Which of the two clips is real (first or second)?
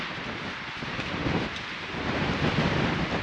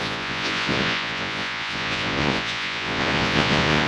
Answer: first